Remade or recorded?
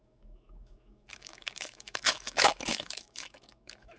remade